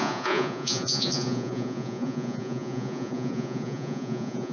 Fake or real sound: fake